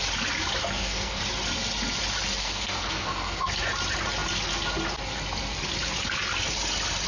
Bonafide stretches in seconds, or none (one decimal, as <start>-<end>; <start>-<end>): 0.0-0.6; 1.2-2.4; 3.5-7.1